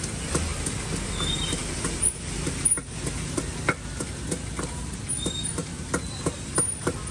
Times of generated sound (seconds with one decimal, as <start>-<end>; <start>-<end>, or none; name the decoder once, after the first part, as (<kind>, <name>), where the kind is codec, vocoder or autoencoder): none

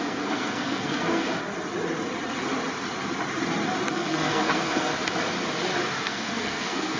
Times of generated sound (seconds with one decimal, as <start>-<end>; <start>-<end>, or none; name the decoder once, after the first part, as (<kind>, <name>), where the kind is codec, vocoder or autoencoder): 0.0-1.3 (codec, SNAC); 3.9-4.9; 5.9-7.0

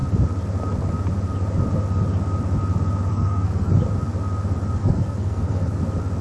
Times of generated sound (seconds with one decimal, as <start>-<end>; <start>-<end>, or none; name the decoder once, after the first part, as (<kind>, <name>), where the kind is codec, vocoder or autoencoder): 3.1-3.7 (codec, SNAC); 4.8-5.8

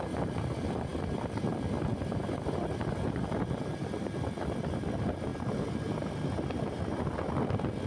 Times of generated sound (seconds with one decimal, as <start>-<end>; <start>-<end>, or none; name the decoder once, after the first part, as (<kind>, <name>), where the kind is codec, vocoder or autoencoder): none

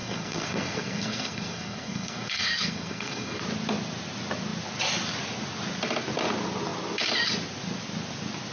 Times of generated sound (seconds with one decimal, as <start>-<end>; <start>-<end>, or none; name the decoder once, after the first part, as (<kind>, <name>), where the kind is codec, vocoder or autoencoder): 0.0-3.4 (codec, SNAC)

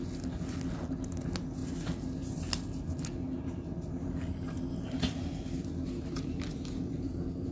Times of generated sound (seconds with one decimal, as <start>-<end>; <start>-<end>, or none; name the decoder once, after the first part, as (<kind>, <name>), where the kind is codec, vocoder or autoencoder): none